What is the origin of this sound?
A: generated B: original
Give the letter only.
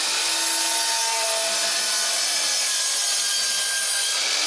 B